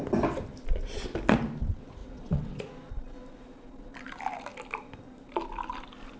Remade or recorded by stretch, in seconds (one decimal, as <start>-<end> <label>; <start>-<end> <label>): 0.0-2.0 recorded; 2.0-2.6 remade; 2.6-6.2 recorded